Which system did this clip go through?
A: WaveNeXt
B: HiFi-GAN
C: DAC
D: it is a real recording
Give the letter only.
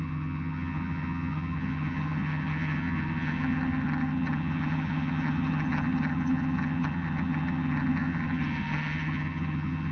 B